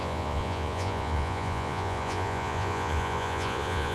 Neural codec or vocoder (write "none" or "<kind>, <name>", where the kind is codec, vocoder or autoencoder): vocoder, Vocos